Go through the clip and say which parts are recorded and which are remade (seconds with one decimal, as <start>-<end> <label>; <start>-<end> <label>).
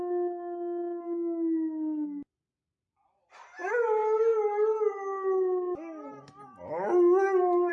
0.0-7.7 recorded